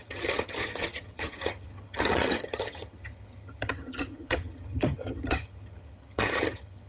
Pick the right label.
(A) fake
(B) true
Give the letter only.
A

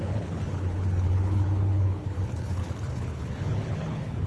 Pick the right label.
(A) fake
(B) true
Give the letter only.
A